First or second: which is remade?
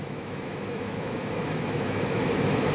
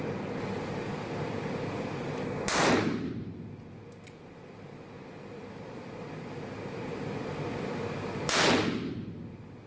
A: first